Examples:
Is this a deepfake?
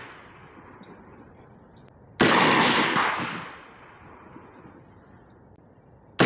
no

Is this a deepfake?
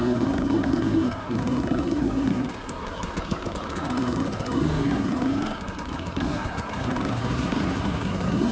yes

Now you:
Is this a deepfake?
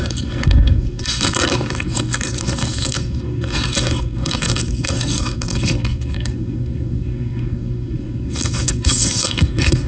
yes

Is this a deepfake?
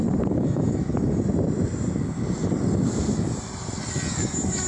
no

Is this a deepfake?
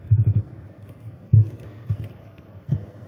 yes